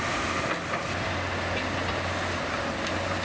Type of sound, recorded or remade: recorded